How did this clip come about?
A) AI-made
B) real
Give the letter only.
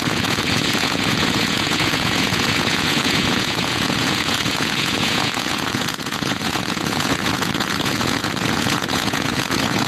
A